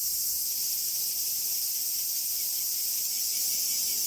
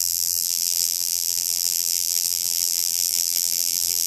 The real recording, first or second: first